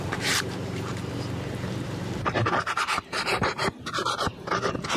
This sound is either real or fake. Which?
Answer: fake